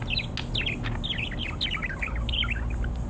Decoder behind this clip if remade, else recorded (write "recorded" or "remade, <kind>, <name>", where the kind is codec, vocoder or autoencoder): recorded